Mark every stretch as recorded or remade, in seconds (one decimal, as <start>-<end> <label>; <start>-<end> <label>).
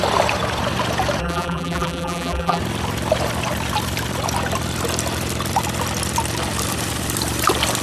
0.0-1.2 recorded; 1.2-2.6 remade; 2.6-7.8 recorded